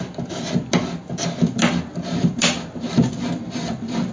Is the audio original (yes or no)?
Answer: yes